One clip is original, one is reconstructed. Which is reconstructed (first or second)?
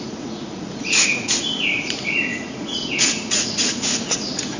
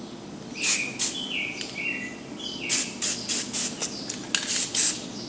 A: first